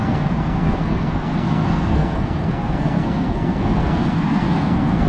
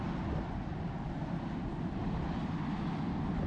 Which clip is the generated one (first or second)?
first